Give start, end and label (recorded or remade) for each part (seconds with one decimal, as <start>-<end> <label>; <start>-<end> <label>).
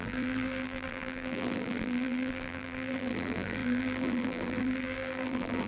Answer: 0.0-5.7 remade